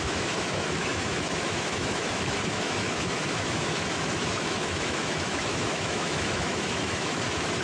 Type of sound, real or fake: fake